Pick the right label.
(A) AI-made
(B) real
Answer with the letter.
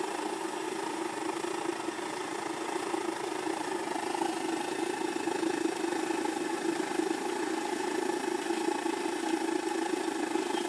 B